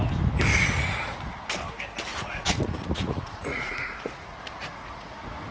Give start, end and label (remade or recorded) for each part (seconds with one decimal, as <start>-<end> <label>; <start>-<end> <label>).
0.0-0.5 recorded; 0.5-1.2 remade; 1.2-2.1 recorded; 2.1-5.5 remade